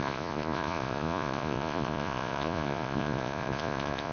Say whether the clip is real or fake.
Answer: fake